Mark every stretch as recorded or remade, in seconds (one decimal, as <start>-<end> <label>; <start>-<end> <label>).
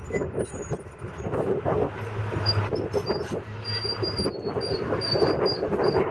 0.0-3.0 recorded; 3.0-6.1 remade